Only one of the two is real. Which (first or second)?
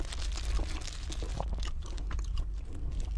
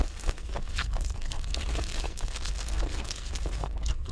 first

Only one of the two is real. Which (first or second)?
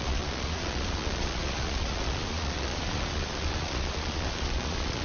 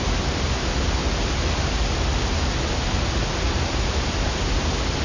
second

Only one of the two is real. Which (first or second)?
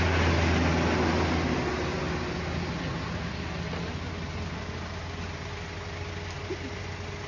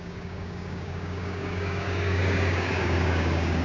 first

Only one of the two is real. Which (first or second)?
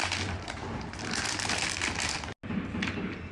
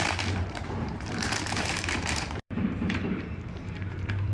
first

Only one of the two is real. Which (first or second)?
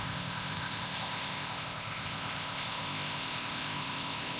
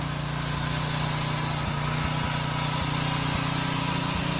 second